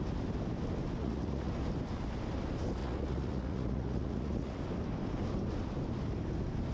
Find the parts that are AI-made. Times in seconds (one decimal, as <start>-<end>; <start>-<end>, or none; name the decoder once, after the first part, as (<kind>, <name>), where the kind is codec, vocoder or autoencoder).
1.0-1.5 (vocoder, Vocos); 2.8-4.6